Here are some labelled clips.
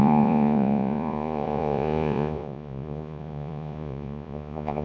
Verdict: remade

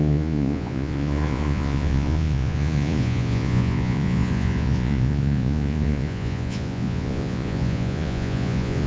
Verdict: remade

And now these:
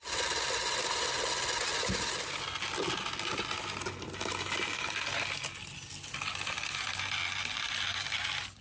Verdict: recorded